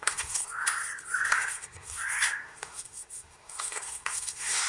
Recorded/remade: remade